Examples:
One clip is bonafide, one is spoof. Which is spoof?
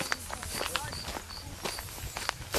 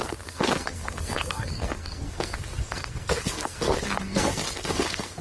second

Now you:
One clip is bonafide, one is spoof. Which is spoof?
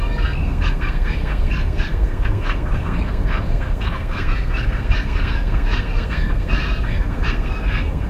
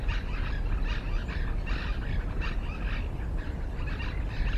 first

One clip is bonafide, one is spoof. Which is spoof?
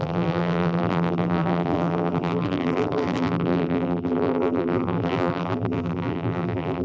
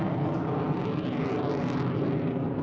first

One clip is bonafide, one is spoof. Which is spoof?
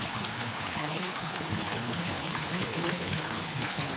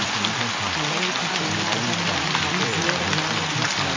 first